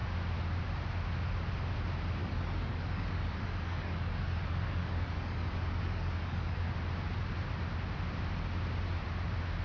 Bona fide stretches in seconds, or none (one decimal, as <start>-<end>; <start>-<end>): 0.0-2.2; 6.7-9.6